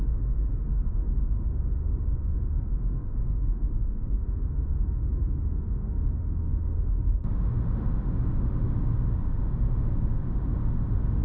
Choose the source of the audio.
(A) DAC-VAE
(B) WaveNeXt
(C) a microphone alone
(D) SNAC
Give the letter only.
A